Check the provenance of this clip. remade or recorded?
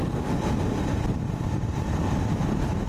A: recorded